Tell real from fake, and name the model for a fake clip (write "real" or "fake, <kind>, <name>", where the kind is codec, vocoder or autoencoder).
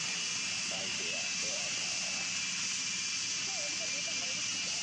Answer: fake, vocoder, BigVGAN v2